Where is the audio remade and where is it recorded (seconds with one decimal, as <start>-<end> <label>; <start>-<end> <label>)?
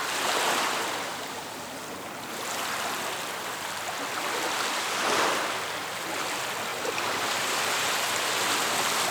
0.0-6.7 recorded; 6.7-8.3 remade; 8.3-9.1 recorded